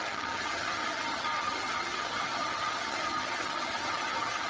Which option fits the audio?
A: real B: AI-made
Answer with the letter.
B